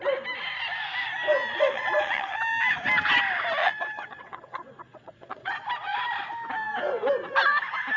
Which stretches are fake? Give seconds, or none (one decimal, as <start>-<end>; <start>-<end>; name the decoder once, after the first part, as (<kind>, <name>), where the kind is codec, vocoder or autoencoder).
1.5-2.4 (vocoder, WaveNeXt); 3.6-5.5